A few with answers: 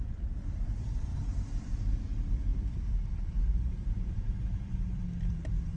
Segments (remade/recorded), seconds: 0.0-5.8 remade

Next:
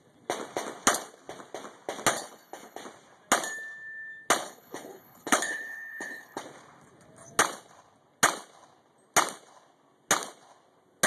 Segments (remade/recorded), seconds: 0.0-2.1 recorded; 2.1-2.8 remade; 2.8-4.4 recorded; 4.4-6.4 remade; 6.4-11.1 recorded